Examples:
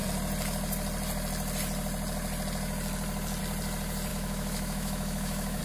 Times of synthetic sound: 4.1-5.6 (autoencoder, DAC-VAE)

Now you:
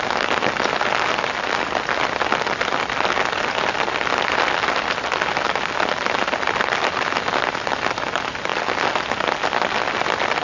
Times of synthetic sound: none

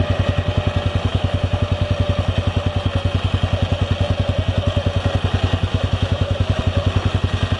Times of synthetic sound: 1.1-1.6 (autoencoder, DAC-VAE); 5.7-6.6

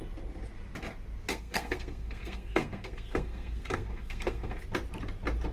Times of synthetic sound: 1.3-4.6 (codec, SNAC)